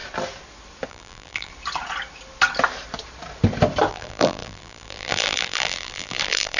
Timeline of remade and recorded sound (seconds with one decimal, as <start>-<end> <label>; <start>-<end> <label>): 0.0-0.9 recorded; 0.9-1.5 remade; 1.5-3.9 recorded; 3.9-6.6 remade

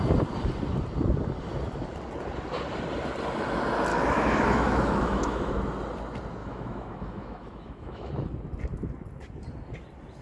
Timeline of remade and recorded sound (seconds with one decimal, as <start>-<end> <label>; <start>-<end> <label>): 0.0-3.9 recorded; 3.9-5.5 remade; 5.5-6.4 recorded; 6.4-8.1 remade; 8.1-10.2 recorded

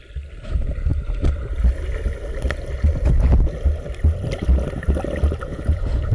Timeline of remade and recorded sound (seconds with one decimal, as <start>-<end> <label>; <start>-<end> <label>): 0.0-5.5 recorded; 5.5-6.1 remade

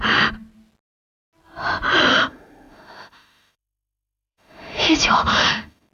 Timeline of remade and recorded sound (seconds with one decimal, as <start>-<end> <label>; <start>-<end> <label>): 0.0-2.1 recorded; 2.1-5.9 remade

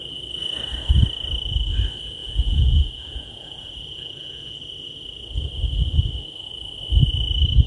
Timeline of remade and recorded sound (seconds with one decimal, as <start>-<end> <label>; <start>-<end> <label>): 0.0-2.2 recorded; 2.2-4.6 remade; 4.6-7.7 recorded

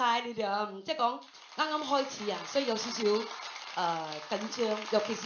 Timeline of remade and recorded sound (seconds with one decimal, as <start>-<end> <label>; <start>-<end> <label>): 0.0-5.3 recorded